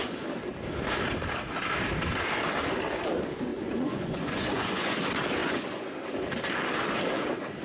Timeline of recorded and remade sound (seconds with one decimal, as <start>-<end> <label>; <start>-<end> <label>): 0.0-3.5 recorded; 3.5-5.0 remade; 5.0-5.4 recorded; 5.4-5.9 remade; 5.9-7.6 recorded